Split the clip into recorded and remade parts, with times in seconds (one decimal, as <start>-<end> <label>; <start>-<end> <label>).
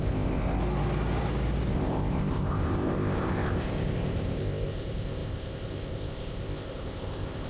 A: 0.0-0.6 remade; 0.6-1.7 recorded; 1.7-7.5 remade